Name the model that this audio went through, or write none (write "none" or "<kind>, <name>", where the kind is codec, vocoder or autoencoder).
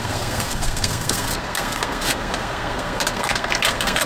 codec, SNAC